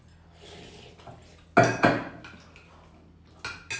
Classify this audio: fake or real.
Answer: real